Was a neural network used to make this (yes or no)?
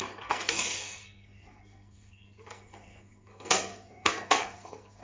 yes